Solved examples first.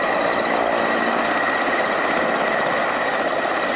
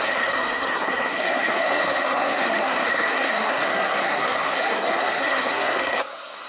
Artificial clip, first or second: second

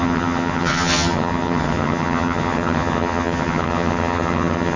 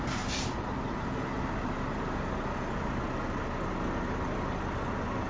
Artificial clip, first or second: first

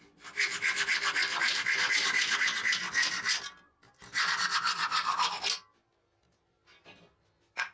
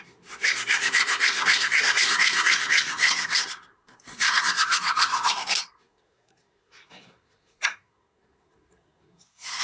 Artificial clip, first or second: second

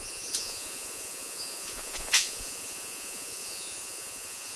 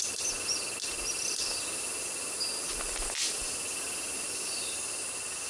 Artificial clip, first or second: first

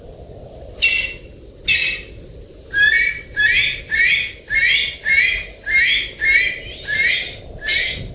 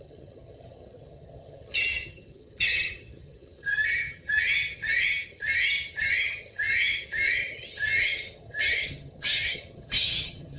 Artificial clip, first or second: second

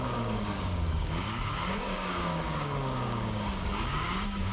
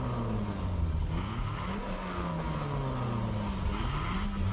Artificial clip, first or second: first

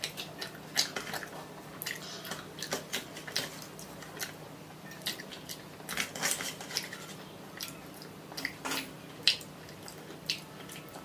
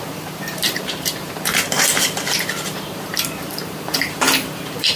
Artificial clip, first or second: second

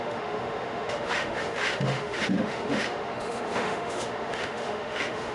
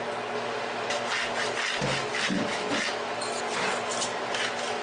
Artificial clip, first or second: first